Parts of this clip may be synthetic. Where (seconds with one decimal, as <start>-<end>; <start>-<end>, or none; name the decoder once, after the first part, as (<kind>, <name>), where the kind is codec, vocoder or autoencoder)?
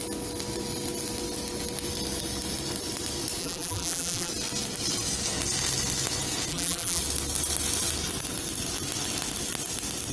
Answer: 3.4-4.3 (vocoder, BigVGAN v2); 6.5-7.0